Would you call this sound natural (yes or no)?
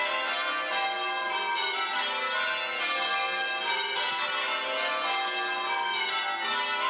yes